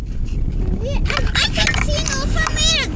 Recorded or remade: recorded